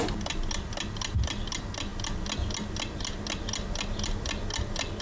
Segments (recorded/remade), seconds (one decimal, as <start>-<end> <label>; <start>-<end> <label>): 0.0-5.0 recorded